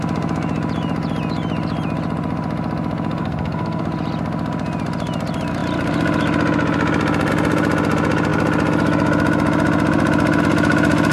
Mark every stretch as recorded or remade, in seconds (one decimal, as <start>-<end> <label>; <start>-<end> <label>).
0.0-3.2 recorded; 3.2-3.8 remade; 3.8-11.1 recorded